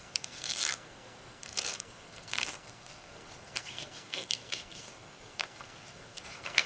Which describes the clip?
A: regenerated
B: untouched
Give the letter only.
A